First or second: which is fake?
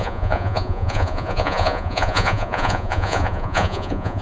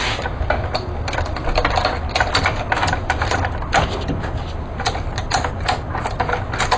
first